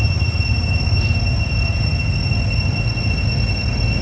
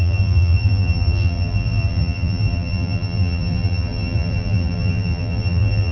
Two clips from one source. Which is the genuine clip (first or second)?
first